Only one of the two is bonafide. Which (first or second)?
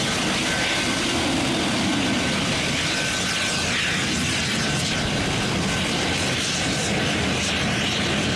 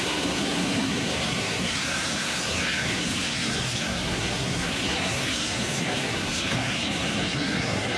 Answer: first